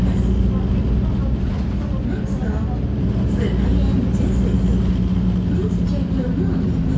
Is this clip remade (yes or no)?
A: no